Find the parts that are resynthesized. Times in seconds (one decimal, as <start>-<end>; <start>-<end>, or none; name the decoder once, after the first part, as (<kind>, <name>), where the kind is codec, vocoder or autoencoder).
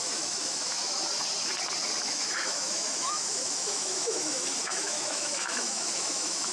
0.0-1.0 (autoencoder, DAC-VAE); 2.0-6.5